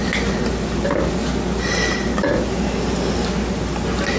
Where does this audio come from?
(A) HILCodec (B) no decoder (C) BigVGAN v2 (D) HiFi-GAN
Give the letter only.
B